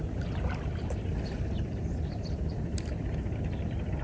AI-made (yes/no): yes